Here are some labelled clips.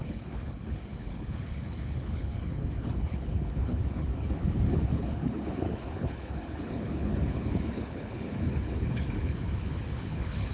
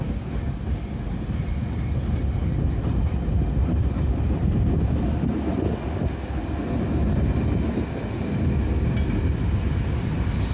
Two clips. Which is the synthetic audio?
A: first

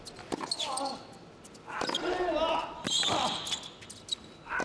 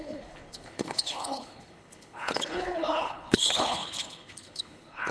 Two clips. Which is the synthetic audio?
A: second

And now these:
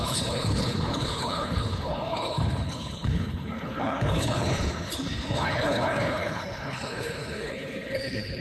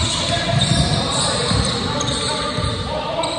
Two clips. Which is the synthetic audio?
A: first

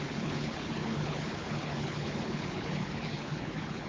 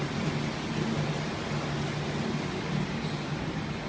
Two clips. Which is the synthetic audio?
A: first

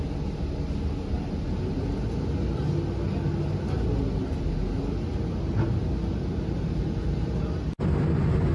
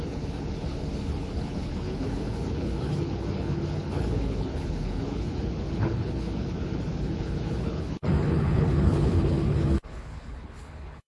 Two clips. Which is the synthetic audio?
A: second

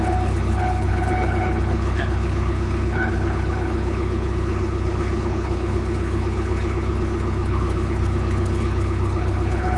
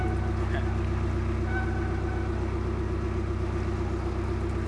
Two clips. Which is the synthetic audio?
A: first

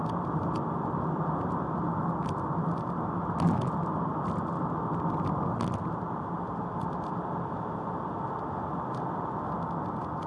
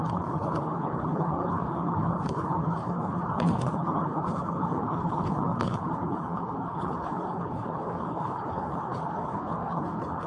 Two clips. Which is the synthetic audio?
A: second